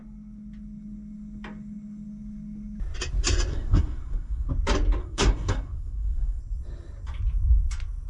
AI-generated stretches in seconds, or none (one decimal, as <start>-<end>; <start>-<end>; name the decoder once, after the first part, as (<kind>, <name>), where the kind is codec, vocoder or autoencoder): 3.5-4.5 (codec, SNAC); 5.0-6.4